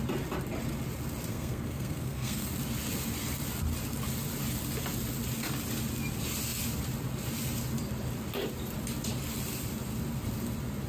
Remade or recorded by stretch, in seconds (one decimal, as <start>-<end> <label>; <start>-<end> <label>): 0.0-1.3 recorded; 1.3-2.5 remade; 2.5-10.9 recorded